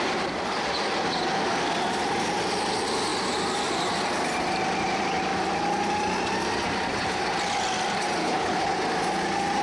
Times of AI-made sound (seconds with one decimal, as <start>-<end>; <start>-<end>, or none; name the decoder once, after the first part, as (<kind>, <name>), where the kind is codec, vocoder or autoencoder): 8.2-8.8 (codec, HILCodec)